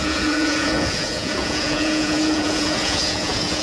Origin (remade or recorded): remade